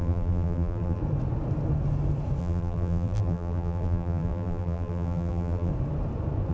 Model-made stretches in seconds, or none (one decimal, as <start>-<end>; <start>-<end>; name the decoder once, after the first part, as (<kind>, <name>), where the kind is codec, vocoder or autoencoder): 0.0-1.0 (vocoder, BigVGAN v2); 2.4-5.7